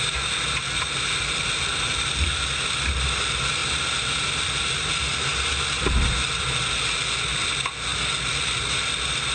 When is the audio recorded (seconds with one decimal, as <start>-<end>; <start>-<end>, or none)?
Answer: 0.0-9.3